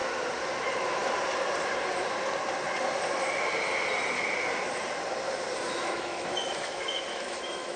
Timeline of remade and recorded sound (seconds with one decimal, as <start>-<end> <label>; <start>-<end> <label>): 0.0-0.6 recorded; 0.6-1.0 remade; 1.0-5.7 recorded; 5.7-7.8 remade